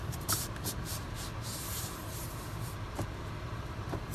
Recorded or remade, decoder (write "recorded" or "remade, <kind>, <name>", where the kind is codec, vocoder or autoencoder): remade, vocoder, BigVGAN v2